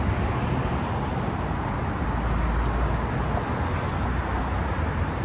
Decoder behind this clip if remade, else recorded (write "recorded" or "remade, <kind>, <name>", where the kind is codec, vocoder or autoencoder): recorded